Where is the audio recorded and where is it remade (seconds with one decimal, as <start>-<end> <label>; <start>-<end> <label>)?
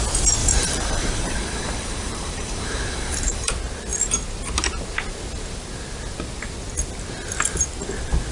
0.0-0.4 recorded; 0.4-3.5 remade; 3.5-8.3 recorded